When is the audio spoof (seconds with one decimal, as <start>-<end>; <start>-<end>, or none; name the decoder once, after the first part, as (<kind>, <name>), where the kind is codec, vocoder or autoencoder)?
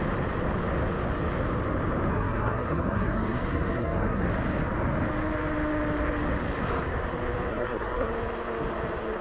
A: 2.1-4.3 (codec, SNAC); 7.5-8.1